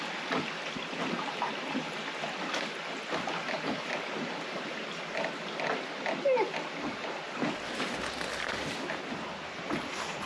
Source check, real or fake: real